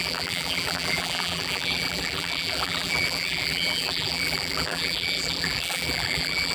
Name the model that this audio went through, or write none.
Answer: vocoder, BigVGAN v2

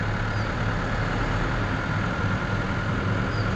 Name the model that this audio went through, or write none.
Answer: none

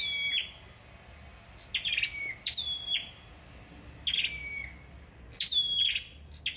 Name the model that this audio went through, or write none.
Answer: none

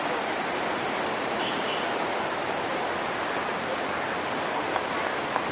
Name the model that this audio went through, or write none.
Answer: none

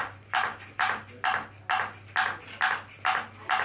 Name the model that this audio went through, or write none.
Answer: none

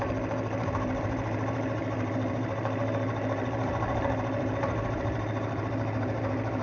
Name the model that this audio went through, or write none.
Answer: vocoder, BigVGAN v2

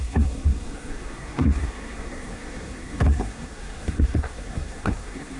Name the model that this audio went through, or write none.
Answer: codec, SNAC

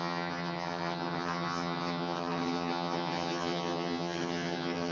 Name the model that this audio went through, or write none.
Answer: vocoder, HiFi-GAN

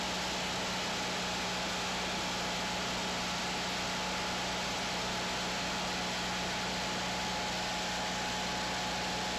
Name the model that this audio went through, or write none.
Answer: none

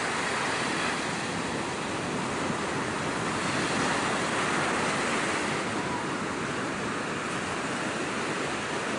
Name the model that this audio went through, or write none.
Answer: none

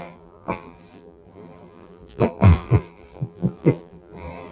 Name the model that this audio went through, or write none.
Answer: vocoder, BigVGAN v2